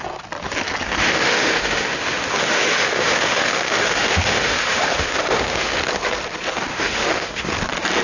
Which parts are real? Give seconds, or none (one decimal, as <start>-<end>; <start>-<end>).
0.0-1.0; 5.8-6.7; 7.5-8.0